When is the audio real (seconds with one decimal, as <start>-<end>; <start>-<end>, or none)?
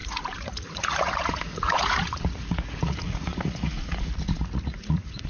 none